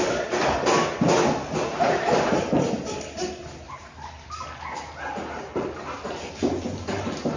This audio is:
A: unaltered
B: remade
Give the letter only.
A